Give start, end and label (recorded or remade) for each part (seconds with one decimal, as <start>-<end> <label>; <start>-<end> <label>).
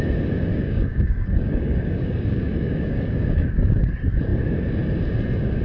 0.0-0.5 recorded; 0.5-3.9 remade; 3.9-5.6 recorded